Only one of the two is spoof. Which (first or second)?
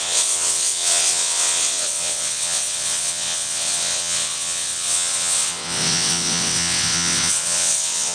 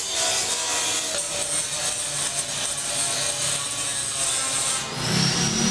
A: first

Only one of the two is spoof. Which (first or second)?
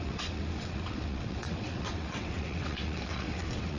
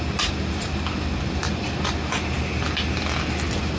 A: first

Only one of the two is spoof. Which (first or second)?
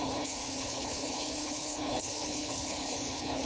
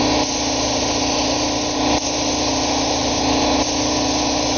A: first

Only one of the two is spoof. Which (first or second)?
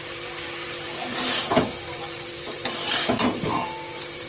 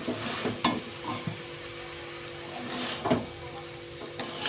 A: first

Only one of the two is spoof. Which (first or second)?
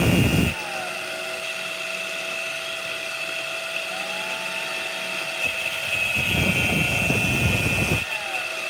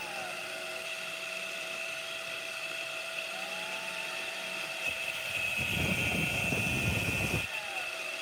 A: second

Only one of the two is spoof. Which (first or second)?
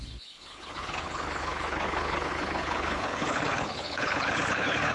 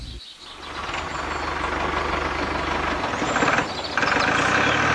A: first